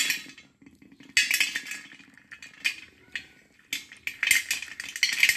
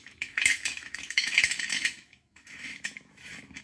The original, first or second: first